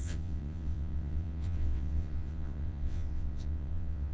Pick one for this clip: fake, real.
fake